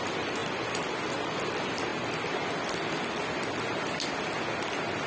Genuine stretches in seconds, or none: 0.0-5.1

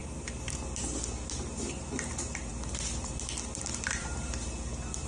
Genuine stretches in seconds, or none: 0.0-2.5; 4.3-5.1

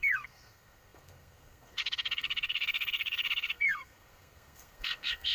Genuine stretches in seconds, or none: none

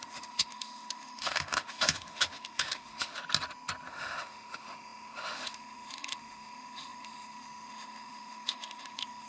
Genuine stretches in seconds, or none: 3.2-3.9

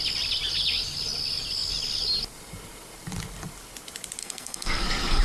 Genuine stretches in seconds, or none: 0.0-4.2

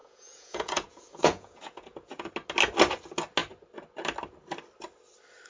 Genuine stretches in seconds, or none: 2.3-5.5

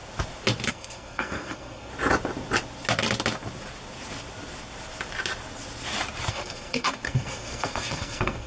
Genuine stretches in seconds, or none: 0.0-0.7; 1.9-6.3

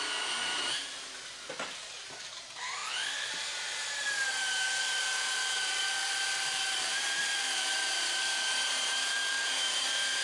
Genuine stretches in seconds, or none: 0.8-1.5; 2.8-4.8